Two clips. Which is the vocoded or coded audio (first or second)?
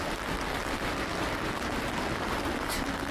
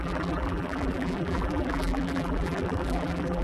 second